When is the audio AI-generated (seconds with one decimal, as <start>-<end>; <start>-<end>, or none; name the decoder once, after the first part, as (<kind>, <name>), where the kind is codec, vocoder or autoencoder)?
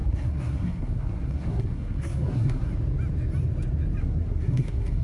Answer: 0.0-2.7 (codec, SNAC); 4.0-5.0